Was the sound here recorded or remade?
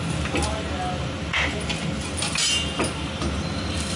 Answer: recorded